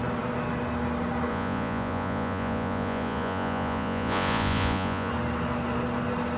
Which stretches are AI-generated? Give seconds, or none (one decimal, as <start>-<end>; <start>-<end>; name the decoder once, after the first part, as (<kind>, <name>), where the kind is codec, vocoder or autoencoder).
1.3-5.1 (vocoder, Vocos)